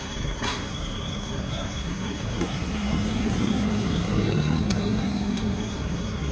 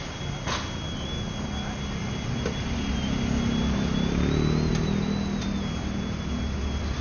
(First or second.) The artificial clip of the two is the first